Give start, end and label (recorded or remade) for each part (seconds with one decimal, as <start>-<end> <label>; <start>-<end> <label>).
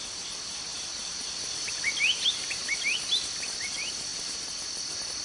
0.0-0.7 recorded; 0.7-1.7 remade; 1.7-2.1 recorded; 2.1-2.7 remade; 2.7-4.1 recorded; 4.1-4.6 remade; 4.6-5.2 recorded